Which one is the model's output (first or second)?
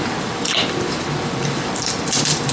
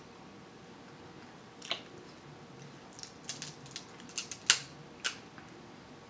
first